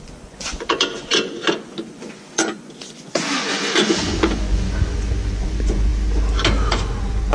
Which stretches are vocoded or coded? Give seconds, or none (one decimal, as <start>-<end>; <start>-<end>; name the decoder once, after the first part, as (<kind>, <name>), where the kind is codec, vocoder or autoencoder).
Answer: 0.0-5.9 (vocoder, Vocos); 6.7-7.3